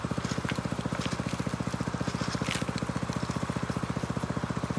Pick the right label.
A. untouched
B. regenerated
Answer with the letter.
A